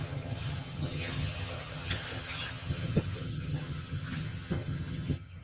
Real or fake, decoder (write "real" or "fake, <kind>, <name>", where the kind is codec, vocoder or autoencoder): fake, vocoder, HiFi-GAN